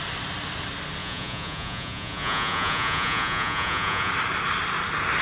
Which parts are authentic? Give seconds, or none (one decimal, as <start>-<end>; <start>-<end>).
0.0-1.0; 4.1-5.2